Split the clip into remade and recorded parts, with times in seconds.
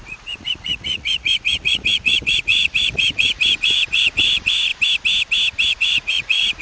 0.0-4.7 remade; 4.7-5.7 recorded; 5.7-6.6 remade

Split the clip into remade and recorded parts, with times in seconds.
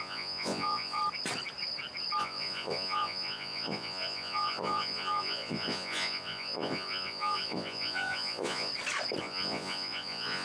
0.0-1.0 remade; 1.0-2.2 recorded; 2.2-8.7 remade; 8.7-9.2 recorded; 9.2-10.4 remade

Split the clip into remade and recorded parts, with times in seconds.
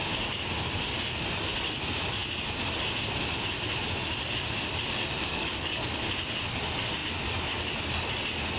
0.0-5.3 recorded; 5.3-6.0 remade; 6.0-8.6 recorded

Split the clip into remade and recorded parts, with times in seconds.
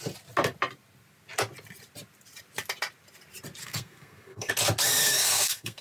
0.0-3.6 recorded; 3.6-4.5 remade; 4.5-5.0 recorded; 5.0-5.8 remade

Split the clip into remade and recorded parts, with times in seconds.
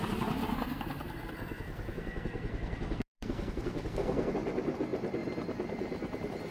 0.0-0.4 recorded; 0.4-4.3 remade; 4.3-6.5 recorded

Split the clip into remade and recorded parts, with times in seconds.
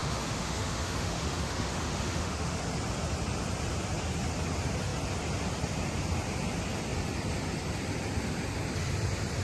0.0-2.6 remade; 2.6-9.4 recorded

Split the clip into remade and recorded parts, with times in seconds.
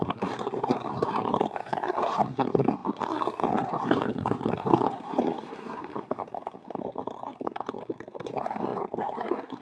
0.0-9.6 remade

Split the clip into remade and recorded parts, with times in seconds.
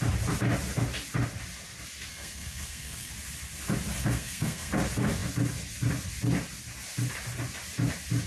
0.0-2.1 recorded; 2.1-3.1 remade; 3.1-4.0 recorded; 4.0-4.7 remade; 4.7-8.3 recorded